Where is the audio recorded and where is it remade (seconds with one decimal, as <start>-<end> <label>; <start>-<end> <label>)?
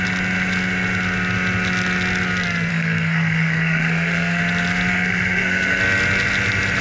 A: 0.0-2.7 recorded; 2.7-4.4 remade; 4.4-4.9 recorded; 4.9-5.8 remade; 5.8-6.8 recorded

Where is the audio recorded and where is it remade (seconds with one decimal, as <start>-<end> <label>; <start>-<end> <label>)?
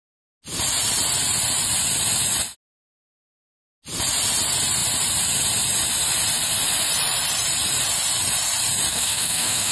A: 0.0-8.9 recorded; 8.9-9.7 remade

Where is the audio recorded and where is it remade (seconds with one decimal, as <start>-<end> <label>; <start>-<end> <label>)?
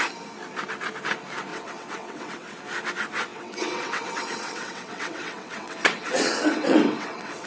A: 0.0-1.5 recorded; 1.5-2.5 remade; 2.5-3.3 recorded; 3.3-7.5 remade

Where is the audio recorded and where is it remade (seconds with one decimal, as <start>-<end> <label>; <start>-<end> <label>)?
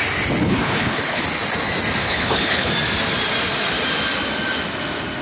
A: 0.0-0.4 recorded; 0.4-1.2 remade; 1.2-2.0 recorded; 2.0-2.7 remade; 2.7-5.2 recorded